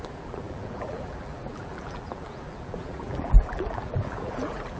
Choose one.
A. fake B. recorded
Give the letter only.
A